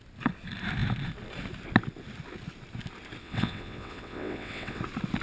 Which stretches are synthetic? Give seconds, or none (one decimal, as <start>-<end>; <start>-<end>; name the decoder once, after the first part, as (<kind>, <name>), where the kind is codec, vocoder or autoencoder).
3.2-4.8 (vocoder, WaveNeXt)

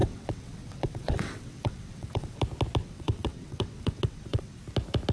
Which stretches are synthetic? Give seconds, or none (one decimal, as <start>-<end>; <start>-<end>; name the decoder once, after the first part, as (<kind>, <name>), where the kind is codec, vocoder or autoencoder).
0.0-2.4 (vocoder, WaveNeXt); 2.8-4.6

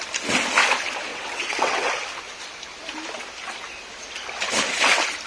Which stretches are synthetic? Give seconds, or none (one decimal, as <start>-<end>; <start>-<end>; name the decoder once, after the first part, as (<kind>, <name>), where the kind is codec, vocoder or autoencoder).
1.1-1.9 (vocoder, WaveNeXt)

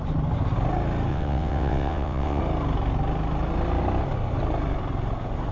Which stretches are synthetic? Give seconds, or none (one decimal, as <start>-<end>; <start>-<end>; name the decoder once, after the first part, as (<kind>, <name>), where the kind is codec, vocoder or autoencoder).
1.1-2.4 (vocoder, WaveNeXt)

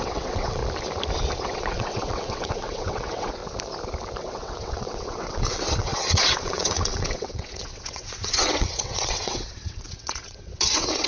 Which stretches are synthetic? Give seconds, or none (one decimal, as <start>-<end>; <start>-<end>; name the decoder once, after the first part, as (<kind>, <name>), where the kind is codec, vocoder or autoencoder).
0.0-0.6 (vocoder, WaveNeXt); 1.4-3.4; 4.2-11.1

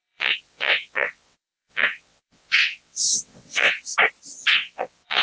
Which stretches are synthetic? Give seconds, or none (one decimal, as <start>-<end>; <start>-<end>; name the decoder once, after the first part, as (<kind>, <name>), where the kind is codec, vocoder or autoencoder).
0.0-3.9 (vocoder, WaveNeXt); 4.5-5.2